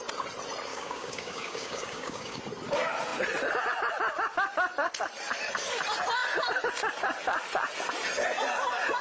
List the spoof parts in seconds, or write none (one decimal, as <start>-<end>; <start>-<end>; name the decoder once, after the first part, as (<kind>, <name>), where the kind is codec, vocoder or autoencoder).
0.7-2.4 (codec, DAC)